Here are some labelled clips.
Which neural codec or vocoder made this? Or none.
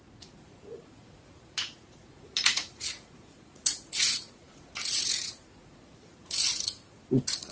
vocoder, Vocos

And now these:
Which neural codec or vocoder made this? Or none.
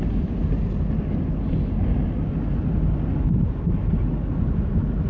none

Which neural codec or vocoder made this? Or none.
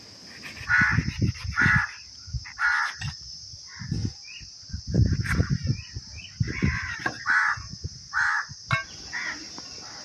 none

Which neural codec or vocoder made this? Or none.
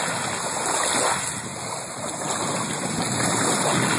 none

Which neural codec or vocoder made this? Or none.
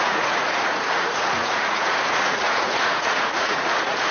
vocoder, Vocos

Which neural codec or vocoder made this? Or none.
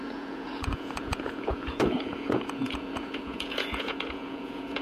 vocoder, Vocos